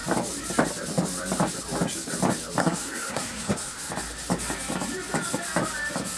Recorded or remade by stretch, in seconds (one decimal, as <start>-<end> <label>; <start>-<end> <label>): 0.0-2.6 recorded; 2.6-3.9 remade; 3.9-6.2 recorded